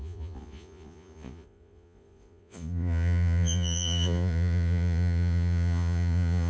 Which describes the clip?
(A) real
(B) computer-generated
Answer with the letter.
B